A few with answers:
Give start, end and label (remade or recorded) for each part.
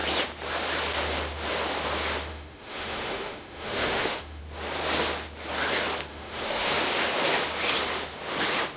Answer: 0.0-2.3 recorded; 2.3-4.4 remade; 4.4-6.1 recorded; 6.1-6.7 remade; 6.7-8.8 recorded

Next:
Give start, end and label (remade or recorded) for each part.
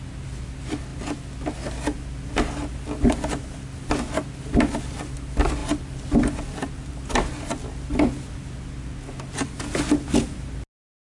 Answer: 0.0-11.0 recorded